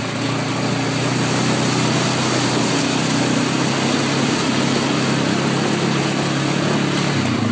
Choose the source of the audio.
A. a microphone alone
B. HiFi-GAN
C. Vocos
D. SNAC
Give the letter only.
A